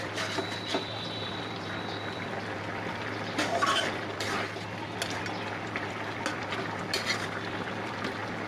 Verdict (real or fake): real